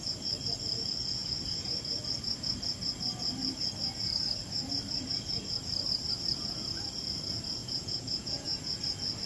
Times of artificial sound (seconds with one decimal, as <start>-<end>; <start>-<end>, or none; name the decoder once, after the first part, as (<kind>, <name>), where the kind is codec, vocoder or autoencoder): 7.6-8.8 (vocoder, Vocos)